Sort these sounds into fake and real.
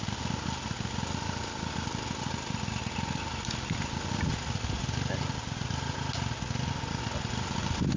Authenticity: real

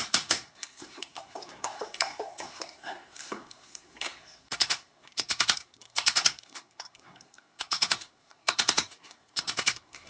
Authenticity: fake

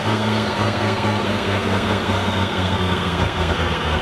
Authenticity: fake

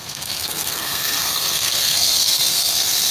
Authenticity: fake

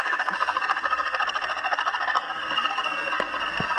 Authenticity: fake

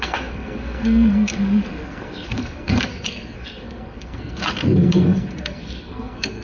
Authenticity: fake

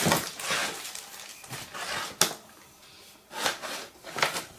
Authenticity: real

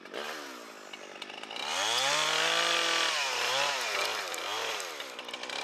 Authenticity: real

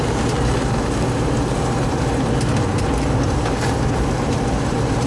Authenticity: fake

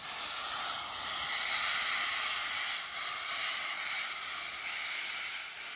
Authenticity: real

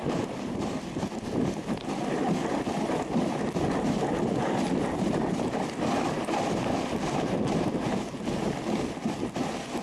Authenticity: real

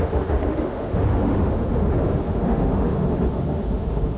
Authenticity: fake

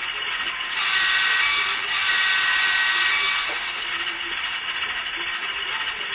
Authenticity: real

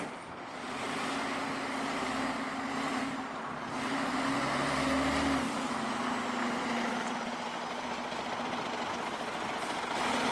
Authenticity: real